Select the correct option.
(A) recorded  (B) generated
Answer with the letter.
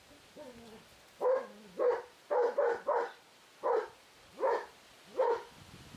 A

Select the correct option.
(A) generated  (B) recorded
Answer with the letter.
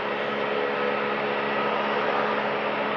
B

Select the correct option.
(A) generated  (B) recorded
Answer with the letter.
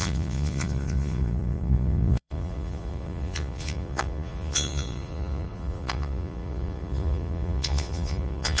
A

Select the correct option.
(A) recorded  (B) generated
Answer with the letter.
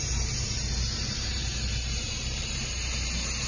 B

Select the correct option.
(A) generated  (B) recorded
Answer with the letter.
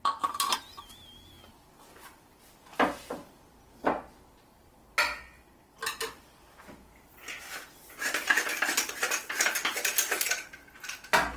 B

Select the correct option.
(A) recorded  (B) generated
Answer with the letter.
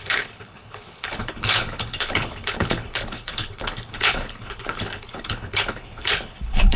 B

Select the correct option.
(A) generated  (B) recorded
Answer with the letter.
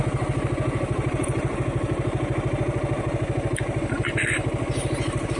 B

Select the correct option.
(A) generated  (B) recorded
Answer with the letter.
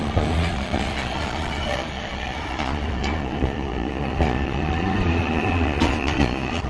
A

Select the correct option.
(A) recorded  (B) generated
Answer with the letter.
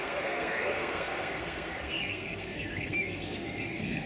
B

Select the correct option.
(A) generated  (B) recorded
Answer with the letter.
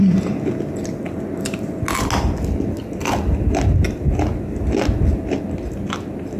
B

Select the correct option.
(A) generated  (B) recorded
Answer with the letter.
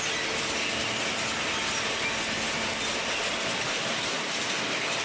B